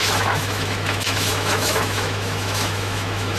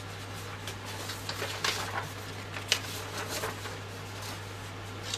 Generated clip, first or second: first